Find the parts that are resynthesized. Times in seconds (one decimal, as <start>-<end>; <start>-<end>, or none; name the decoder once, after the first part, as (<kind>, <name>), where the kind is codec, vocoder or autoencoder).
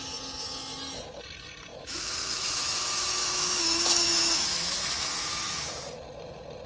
1.7-5.7 (autoencoder, DAC-VAE)